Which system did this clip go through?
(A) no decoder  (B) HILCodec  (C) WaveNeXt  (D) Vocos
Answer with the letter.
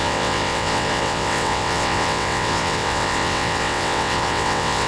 C